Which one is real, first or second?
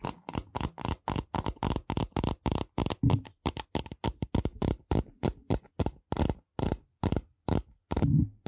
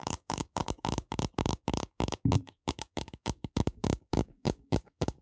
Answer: first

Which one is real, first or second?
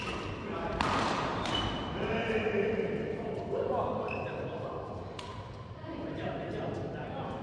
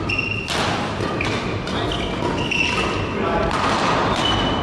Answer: second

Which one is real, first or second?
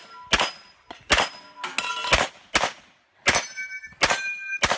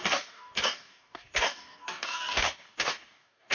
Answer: first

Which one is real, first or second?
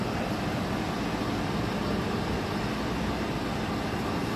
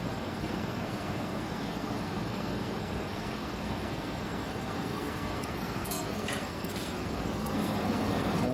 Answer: first